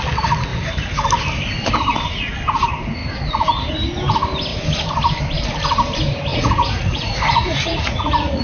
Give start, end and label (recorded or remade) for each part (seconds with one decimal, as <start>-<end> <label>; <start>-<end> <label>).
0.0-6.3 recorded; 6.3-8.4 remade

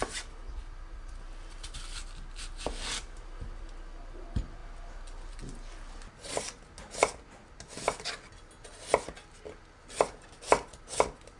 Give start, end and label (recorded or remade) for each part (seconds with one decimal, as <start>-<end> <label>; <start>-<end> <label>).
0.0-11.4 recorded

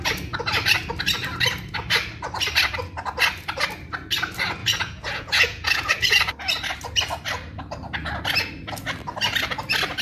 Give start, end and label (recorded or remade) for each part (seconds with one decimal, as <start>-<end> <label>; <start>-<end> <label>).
0.0-4.6 recorded; 4.6-6.2 remade; 6.2-10.0 recorded

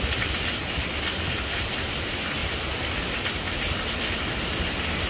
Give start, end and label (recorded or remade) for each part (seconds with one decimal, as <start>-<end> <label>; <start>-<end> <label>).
0.0-5.1 recorded